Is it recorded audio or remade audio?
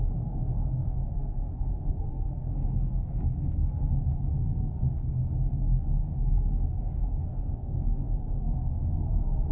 remade